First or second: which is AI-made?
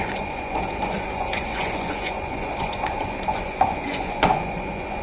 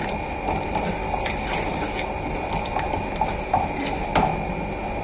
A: first